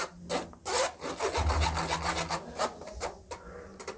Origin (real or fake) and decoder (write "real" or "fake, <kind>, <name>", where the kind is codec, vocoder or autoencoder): real